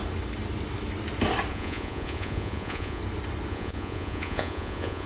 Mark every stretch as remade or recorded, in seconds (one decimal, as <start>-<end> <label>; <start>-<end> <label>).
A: 0.0-1.5 recorded; 1.5-3.0 remade; 3.0-3.5 recorded; 3.5-5.1 remade